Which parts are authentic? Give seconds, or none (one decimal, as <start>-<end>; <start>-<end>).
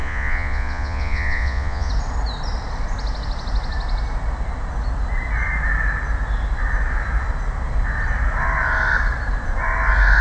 1.9-10.2